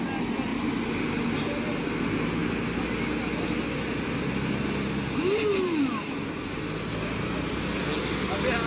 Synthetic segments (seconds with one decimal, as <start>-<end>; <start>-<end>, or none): none